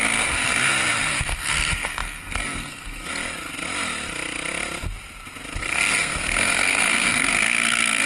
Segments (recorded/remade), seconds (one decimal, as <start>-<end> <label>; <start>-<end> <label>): 0.0-0.5 remade; 0.5-1.1 recorded; 1.1-3.1 remade; 3.1-5.6 recorded; 5.6-8.1 remade